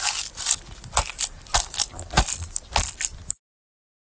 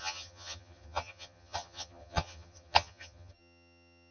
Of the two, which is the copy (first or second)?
second